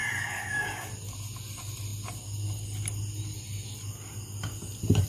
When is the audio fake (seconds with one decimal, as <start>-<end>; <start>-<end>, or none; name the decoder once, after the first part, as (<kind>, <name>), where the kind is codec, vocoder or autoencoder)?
0.0-0.9 (codec, DAC)